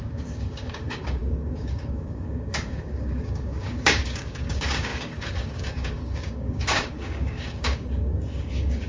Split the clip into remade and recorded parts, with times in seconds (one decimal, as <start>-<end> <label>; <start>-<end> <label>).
0.0-8.9 remade